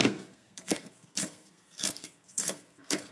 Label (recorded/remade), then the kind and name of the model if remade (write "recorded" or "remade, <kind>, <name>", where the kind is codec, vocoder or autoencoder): remade, codec, SNAC